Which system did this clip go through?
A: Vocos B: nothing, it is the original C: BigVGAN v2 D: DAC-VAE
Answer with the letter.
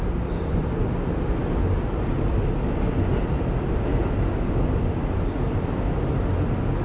B